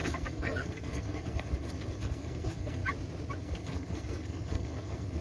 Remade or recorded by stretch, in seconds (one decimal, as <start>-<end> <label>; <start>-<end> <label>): 0.0-2.8 remade; 2.8-3.4 recorded; 3.4-5.2 remade